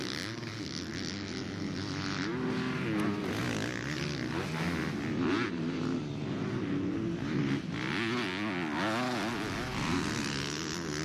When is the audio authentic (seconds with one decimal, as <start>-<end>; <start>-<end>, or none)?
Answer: 0.0-11.0